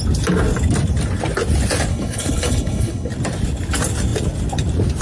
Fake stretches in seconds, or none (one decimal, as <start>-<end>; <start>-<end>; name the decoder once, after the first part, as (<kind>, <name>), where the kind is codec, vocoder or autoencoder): 1.9-3.1 (codec, HILCodec)